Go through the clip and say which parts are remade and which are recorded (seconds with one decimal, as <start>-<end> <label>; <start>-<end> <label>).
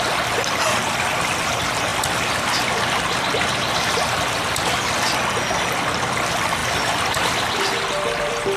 0.0-8.6 recorded